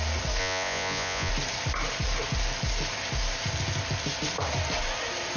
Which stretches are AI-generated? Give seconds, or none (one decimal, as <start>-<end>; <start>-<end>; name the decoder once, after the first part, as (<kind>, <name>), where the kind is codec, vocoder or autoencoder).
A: 0.4-1.3 (vocoder, Vocos)